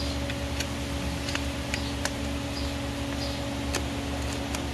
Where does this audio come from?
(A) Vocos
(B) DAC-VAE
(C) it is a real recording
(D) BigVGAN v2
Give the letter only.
C